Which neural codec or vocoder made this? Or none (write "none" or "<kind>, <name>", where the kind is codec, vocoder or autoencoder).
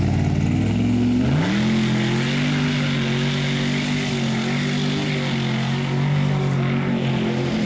none